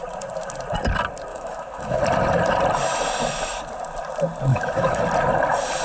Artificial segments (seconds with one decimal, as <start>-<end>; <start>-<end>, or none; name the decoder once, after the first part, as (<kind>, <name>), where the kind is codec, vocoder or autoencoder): 1.3-2.0 (autoencoder, DAC-VAE); 4.5-5.0